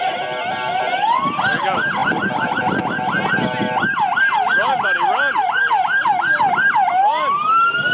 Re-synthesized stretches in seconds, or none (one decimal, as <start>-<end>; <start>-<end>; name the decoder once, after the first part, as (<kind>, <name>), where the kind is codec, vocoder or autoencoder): none